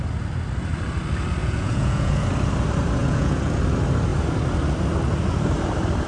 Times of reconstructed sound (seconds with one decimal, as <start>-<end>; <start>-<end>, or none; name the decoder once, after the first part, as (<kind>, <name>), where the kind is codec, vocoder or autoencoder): 1.4-2.1 (vocoder, Vocos); 3.0-3.6